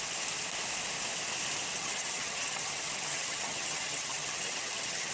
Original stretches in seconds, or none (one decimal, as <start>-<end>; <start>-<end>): 0.0-1.7